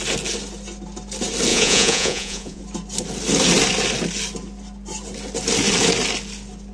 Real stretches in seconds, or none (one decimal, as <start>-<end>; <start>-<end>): 0.0-1.5; 2.6-6.7

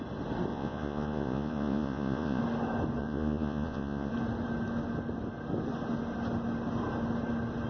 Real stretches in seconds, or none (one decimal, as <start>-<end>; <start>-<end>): 0.0-0.5; 2.4-3.0; 4.1-7.7